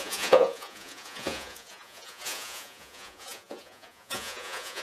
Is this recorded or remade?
remade